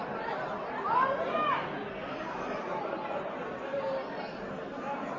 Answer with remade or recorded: recorded